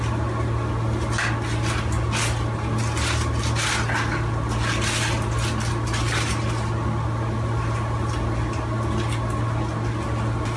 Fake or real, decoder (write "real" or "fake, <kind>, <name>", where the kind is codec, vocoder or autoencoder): real